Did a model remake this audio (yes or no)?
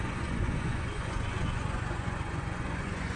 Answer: yes